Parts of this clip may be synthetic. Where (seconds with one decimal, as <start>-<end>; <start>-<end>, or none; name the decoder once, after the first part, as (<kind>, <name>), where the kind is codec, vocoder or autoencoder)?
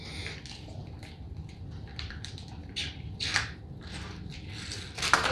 0.8-1.5 (vocoder, BigVGAN v2); 1.9-3.3